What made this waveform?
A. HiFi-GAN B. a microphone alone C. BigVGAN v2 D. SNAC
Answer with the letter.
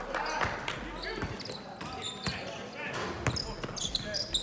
B